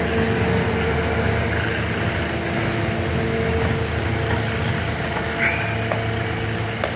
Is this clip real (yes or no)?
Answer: yes